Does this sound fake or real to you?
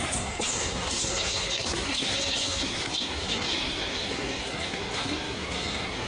fake